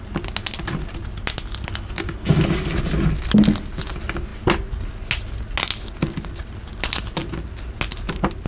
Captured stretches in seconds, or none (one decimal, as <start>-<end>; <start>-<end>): 0.0-8.5